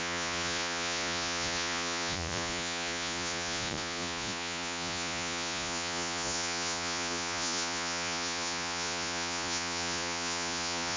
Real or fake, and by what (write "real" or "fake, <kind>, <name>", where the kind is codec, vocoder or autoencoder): fake, vocoder, Vocos